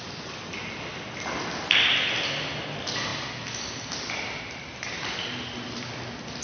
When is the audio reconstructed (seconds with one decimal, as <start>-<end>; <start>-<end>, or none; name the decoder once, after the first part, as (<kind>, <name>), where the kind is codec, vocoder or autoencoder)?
none

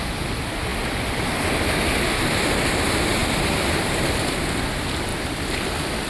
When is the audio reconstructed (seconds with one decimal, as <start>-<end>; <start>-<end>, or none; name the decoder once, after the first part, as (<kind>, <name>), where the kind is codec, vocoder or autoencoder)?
3.2-4.2 (vocoder, BigVGAN v2); 5.1-6.1